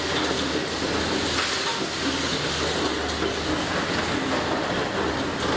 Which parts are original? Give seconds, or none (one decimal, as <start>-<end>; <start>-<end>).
0.0-5.6